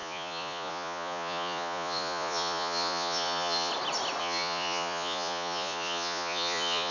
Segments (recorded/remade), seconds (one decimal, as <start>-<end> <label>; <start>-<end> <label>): 0.0-3.7 remade; 3.7-4.2 recorded; 4.2-6.9 remade